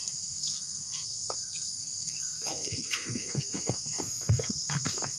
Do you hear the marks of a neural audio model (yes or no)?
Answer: yes